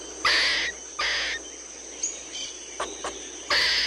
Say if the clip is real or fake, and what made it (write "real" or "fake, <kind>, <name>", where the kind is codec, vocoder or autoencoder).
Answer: real